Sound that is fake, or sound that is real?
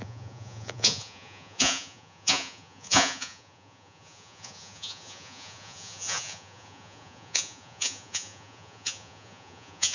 fake